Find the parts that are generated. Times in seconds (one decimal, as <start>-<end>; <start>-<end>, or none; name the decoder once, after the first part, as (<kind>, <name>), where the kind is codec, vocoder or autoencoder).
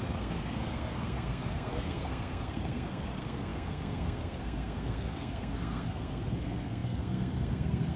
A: 0.0-8.0 (codec, SNAC)